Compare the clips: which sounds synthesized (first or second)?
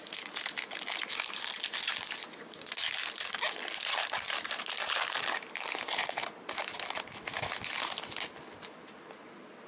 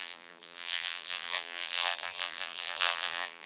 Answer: second